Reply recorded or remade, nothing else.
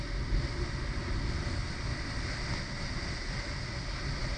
recorded